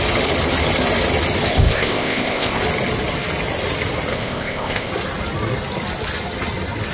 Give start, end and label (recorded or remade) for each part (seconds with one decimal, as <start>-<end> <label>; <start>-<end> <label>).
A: 0.0-1.5 recorded; 1.5-2.6 remade; 2.6-4.1 recorded; 4.1-4.9 remade; 4.9-6.9 recorded